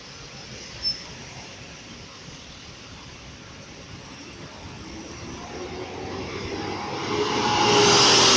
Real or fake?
real